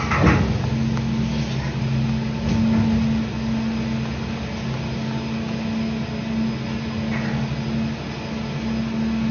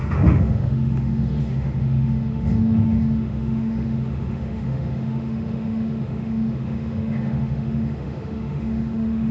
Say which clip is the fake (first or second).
second